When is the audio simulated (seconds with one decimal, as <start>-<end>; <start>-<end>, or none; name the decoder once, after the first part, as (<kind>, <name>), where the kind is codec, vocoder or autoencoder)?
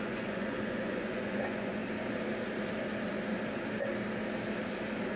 0.0-1.8 (vocoder, Vocos)